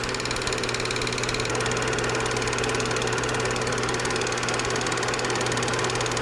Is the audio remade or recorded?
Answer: recorded